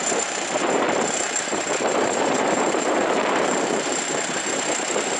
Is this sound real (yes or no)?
no